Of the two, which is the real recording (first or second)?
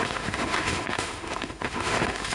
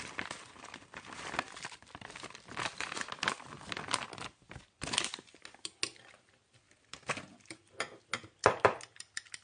second